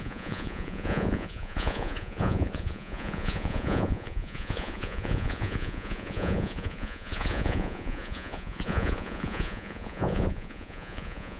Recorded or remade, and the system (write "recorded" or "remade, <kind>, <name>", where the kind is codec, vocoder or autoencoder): remade, vocoder, Vocos